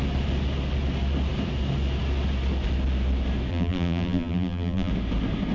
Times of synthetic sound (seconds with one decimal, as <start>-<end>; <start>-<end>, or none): 3.5-4.9